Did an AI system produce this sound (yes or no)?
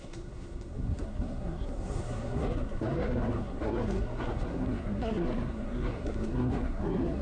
yes